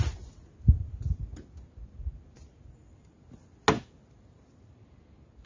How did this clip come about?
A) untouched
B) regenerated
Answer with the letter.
A